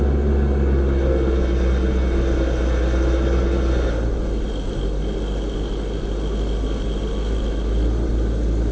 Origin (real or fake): real